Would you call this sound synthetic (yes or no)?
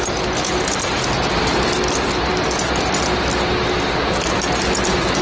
no